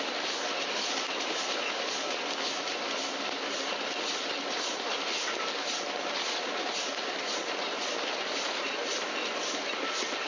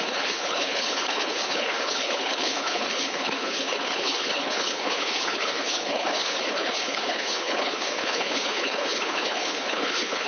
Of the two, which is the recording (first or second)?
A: first